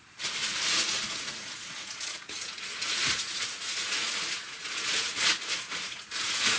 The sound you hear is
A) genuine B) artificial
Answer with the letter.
B